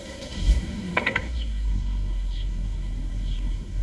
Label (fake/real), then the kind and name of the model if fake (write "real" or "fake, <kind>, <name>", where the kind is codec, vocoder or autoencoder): fake, codec, SNAC